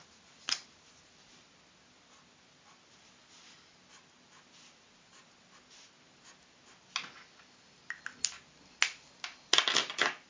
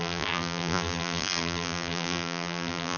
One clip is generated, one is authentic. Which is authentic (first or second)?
first